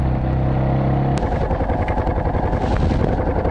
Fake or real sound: real